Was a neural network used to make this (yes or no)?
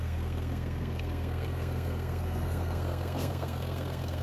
yes